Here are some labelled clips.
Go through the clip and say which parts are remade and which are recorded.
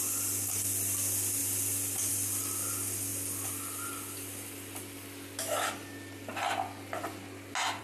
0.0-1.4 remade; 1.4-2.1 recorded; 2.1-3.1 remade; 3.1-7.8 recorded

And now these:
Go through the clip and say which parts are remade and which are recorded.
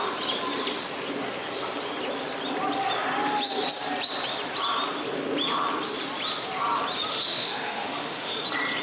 0.0-7.1 recorded; 7.1-8.4 remade; 8.4-8.8 recorded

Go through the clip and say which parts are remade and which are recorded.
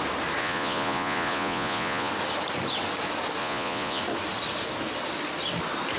0.0-0.4 recorded; 0.4-2.1 remade; 2.1-3.4 recorded; 3.4-4.0 remade; 4.0-6.0 recorded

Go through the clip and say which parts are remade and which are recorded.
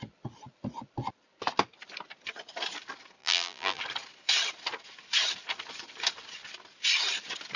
0.0-3.2 recorded; 3.2-3.8 remade; 3.8-7.6 recorded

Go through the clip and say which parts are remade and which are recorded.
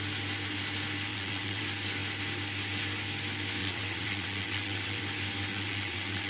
0.0-1.1 recorded; 1.1-1.6 remade; 1.6-3.6 recorded; 3.6-5.0 remade; 5.0-5.5 recorded; 5.5-6.3 remade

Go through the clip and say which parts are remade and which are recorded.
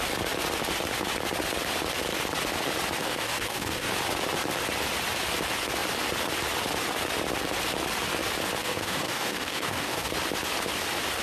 0.0-3.0 recorded; 3.0-3.9 remade; 3.9-8.6 recorded; 8.6-10.1 remade; 10.1-11.2 recorded